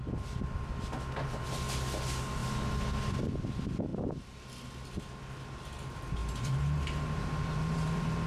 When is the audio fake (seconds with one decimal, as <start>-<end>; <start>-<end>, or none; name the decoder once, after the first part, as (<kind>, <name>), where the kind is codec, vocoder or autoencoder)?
3.9-4.5 (vocoder, BigVGAN v2); 6.2-8.3